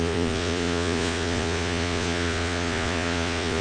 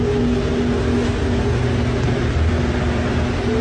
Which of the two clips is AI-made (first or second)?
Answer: first